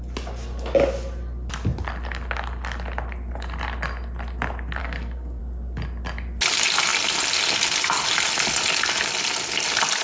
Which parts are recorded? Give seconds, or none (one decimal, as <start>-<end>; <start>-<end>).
0.0-4.8; 5.4-10.0